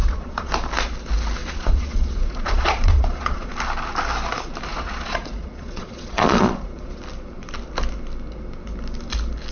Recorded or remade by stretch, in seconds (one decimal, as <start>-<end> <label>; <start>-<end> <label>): 0.0-0.5 remade; 0.5-1.4 recorded; 1.4-3.5 remade; 3.5-4.7 recorded; 4.7-7.0 remade; 7.0-9.5 recorded